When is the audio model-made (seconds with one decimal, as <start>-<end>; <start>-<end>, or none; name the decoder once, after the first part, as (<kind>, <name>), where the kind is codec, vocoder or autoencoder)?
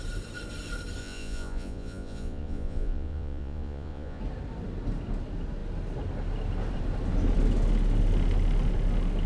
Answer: 1.0-4.2 (vocoder, Vocos)